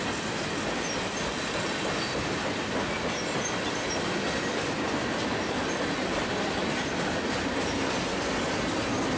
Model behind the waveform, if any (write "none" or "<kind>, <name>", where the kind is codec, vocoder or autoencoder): none